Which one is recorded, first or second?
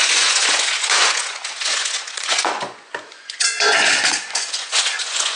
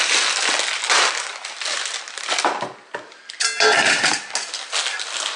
second